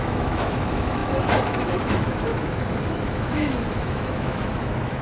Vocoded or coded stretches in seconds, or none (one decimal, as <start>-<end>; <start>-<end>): 0.0-5.0

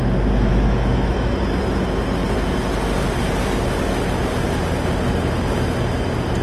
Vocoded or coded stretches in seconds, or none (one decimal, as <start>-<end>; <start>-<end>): 0.5-1.3